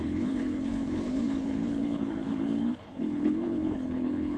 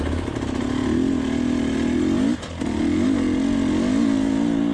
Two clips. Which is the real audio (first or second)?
second